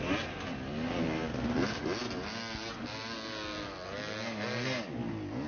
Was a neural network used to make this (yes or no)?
no